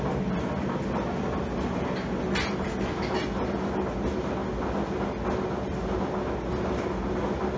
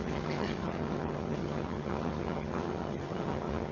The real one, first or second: first